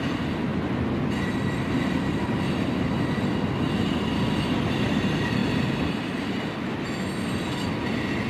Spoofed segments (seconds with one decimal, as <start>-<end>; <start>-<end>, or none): none